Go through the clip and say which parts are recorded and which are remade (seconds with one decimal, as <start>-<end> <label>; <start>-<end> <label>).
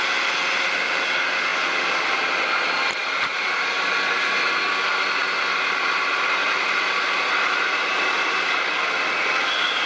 0.0-9.9 recorded